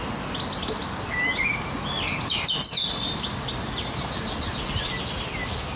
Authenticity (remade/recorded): recorded